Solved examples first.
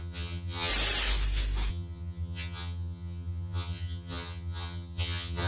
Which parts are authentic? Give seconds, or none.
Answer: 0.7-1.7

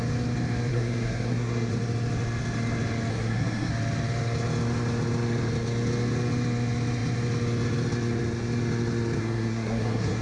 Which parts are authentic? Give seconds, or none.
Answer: 0.0-0.7; 1.7-3.1; 3.7-9.2

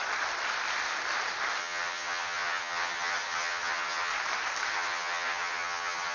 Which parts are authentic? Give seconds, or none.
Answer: 0.0-1.6; 4.1-4.7

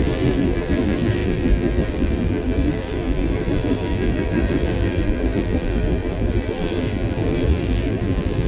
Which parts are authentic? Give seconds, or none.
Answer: none

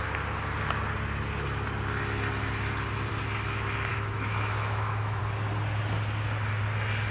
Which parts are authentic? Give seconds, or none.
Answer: 0.0-3.9; 5.2-7.1

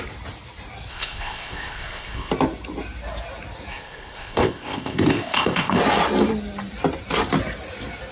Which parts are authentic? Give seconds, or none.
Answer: 0.0-0.9; 2.3-3.7; 5.8-8.1

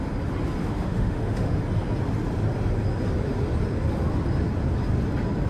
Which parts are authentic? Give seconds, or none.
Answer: 0.0-0.6; 1.6-5.5